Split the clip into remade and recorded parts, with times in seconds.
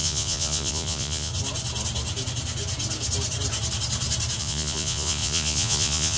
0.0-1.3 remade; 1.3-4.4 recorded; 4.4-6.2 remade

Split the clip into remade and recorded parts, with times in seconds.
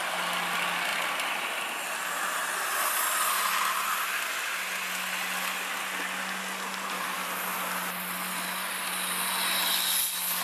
0.0-10.4 recorded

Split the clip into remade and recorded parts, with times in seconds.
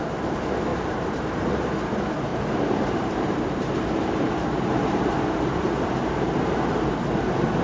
0.0-0.7 recorded; 0.7-1.5 remade; 1.5-2.3 recorded; 2.3-6.9 remade; 6.9-7.6 recorded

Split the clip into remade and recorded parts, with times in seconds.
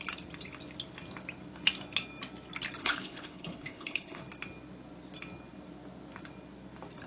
0.0-2.8 recorded; 2.8-4.2 remade; 4.2-7.1 recorded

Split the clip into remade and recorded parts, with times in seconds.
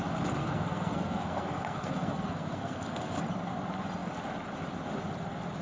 0.0-0.4 recorded; 0.4-3.2 remade; 3.2-5.6 recorded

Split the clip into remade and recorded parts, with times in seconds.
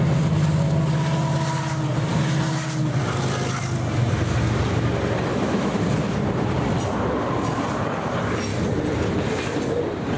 0.0-5.3 recorded; 5.3-5.8 remade; 5.8-10.2 recorded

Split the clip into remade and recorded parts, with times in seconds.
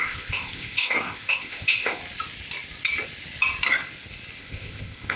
0.0-2.0 remade; 2.0-4.4 recorded; 4.4-5.2 remade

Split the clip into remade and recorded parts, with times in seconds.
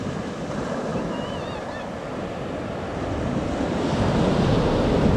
0.0-5.2 recorded